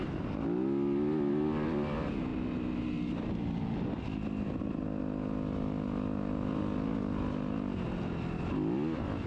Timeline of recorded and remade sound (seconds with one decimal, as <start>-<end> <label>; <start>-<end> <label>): 0.0-9.3 recorded